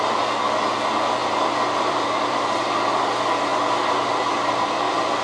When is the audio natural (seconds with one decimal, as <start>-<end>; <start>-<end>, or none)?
0.0-1.2; 2.4-5.2